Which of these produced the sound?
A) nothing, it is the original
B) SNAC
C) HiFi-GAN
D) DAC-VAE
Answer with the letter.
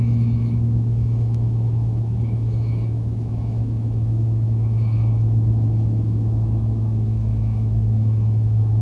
D